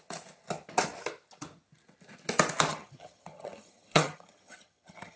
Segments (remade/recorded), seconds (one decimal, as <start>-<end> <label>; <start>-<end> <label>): 0.0-2.7 recorded; 2.7-5.2 remade